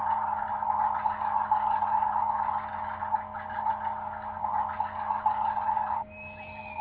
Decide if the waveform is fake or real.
real